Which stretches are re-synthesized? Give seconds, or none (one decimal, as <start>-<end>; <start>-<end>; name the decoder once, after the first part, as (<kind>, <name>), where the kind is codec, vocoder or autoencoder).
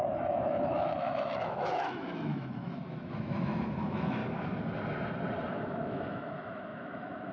0.0-4.2 (autoencoder, DAC-VAE); 5.5-7.3